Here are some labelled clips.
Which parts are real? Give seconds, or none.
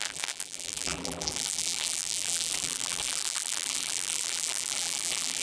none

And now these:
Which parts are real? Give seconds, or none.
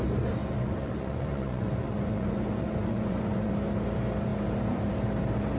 0.0-0.4; 3.5-5.6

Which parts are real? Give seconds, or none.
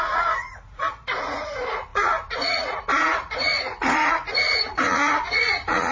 none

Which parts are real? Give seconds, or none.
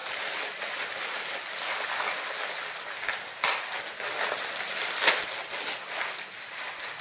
0.0-7.0